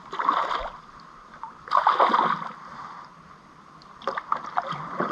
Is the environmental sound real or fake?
real